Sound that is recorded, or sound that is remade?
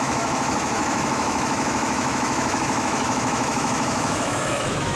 remade